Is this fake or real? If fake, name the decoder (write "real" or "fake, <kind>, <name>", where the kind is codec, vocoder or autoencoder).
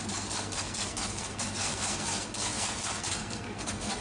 fake, codec, SNAC